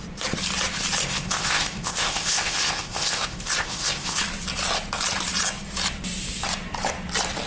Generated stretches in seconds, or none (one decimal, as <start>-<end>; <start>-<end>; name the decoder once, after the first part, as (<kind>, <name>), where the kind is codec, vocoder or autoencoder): 1.0-4.2 (codec, ZipCodec)